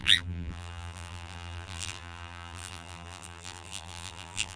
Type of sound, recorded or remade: remade